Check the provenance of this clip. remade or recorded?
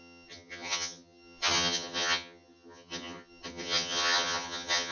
remade